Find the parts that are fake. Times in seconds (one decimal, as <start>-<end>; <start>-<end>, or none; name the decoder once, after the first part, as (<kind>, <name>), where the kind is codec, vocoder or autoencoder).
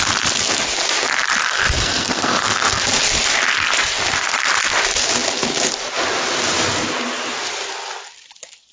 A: 1.4-2.8 (codec, SNAC)